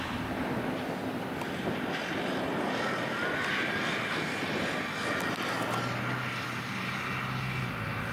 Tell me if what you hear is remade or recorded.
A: recorded